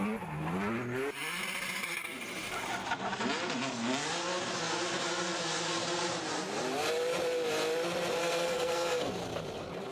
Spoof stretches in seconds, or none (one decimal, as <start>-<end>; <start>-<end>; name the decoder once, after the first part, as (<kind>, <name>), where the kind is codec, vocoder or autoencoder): 8.2-9.1 (codec, SNAC)